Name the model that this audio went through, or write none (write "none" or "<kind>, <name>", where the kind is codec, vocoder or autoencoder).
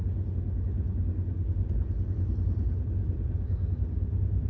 none